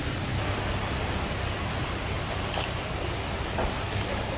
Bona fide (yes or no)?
yes